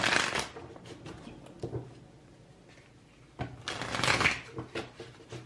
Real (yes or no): yes